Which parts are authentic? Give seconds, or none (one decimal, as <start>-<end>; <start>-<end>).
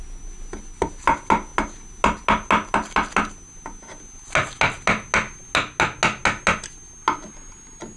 0.0-8.0